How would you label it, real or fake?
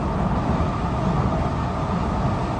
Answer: real